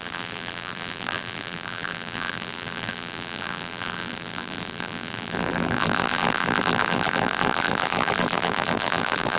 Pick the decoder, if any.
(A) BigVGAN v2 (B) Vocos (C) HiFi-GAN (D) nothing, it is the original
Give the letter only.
A